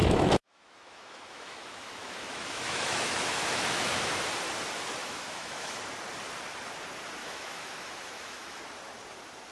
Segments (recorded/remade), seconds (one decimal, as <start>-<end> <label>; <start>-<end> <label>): 0.0-4.1 remade; 4.1-5.0 recorded; 5.0-5.8 remade; 5.8-7.2 recorded; 7.2-8.6 remade; 8.6-9.5 recorded